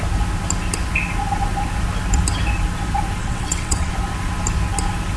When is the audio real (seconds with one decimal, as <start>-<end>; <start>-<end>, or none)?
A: 0.0-3.2; 3.9-5.2